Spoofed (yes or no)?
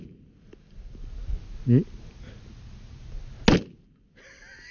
no